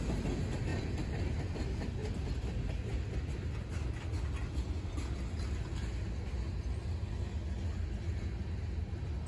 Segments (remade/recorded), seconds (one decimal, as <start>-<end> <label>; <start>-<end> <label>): 0.0-0.7 recorded; 0.7-1.4 remade; 1.4-9.3 recorded